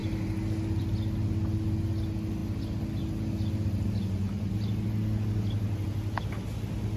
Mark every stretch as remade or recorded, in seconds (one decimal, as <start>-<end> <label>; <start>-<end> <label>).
0.0-7.0 recorded